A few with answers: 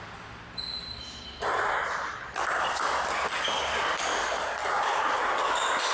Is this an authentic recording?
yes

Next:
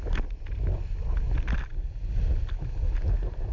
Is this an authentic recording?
yes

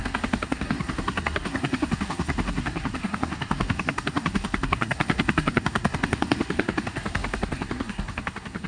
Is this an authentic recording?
no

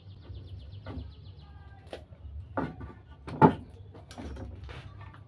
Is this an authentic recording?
yes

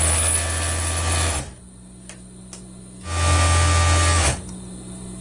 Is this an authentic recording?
yes